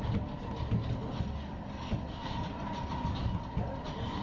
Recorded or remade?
recorded